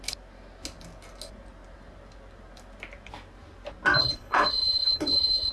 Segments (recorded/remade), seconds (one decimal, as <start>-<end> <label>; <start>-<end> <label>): 0.0-4.0 recorded; 4.0-5.5 remade